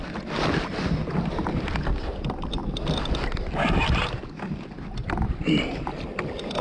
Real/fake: real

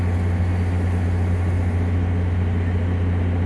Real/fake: real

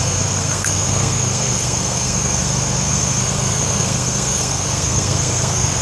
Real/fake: fake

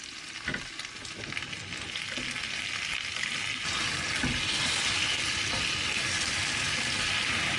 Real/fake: real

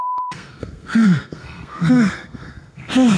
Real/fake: fake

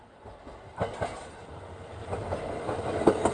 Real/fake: real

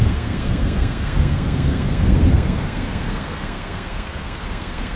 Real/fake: fake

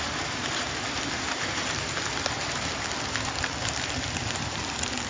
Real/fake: real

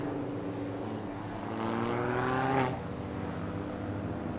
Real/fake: real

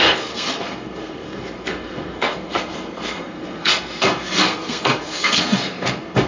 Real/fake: fake